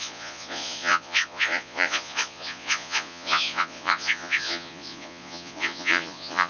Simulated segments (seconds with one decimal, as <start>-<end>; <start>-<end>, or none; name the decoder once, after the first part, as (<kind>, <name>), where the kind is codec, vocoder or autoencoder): 0.0-6.5 (vocoder, Vocos)